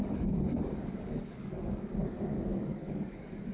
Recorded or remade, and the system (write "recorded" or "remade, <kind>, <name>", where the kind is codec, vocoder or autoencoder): remade, codec, DAC